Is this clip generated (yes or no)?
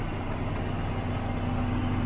no